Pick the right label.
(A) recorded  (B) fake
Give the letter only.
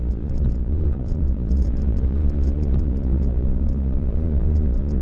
B